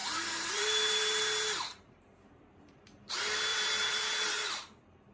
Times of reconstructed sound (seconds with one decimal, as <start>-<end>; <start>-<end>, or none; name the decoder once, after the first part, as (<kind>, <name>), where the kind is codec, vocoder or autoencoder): 0.0-3.1 (vocoder, BigVGAN v2); 3.5-4.3